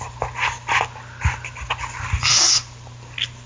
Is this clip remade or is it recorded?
recorded